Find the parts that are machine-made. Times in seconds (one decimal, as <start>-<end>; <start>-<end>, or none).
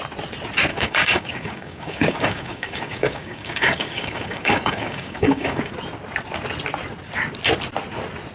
0.7-5.7